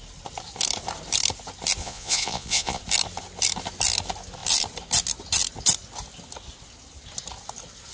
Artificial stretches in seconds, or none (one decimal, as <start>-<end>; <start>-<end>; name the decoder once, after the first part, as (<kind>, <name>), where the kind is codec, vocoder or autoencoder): 1.8-2.8 (vocoder, Vocos)